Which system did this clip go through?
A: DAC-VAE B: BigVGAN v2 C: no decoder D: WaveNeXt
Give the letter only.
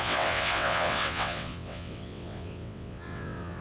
D